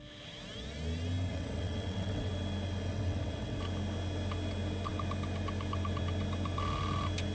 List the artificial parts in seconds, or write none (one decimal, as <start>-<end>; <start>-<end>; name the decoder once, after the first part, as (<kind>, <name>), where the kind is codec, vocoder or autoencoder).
1.3-2.3 (vocoder, WaveNeXt); 2.9-3.6